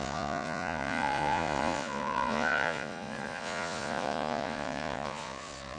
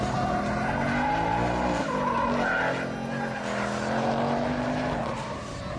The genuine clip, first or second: second